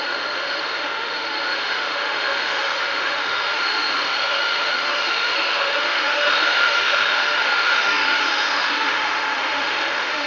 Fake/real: fake